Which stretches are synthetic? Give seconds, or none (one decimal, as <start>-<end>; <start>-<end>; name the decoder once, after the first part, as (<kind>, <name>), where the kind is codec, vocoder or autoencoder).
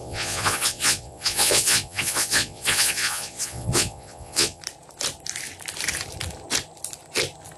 0.0-4.6 (vocoder, Vocos)